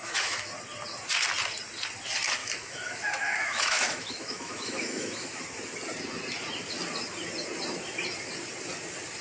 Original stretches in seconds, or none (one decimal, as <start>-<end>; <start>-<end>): 0.5-2.4; 5.4-9.2